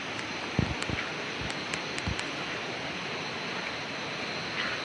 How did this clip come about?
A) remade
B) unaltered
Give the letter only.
B